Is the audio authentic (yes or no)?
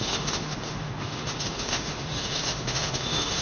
no